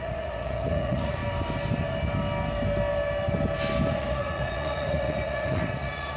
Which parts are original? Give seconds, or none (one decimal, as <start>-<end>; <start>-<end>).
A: 1.2-3.9